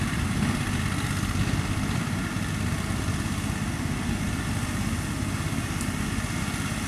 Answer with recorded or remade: recorded